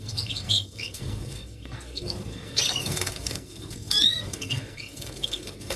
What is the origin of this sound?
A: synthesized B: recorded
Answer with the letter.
A